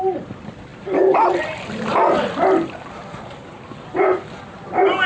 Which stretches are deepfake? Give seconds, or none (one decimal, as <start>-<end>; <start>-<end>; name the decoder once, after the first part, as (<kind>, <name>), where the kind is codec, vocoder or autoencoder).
none